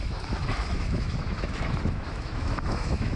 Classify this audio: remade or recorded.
remade